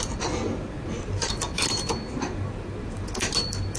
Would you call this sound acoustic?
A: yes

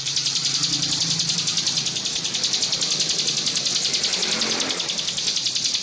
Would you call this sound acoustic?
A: yes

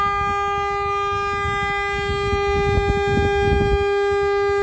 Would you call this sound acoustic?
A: yes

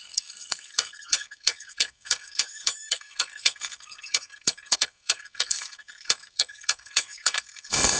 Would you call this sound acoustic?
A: no